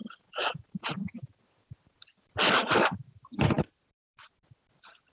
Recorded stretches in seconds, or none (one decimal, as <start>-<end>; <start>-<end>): 0.6-2.0